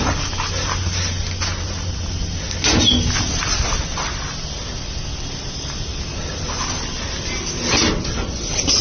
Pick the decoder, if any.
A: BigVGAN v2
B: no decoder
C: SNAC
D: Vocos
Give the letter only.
B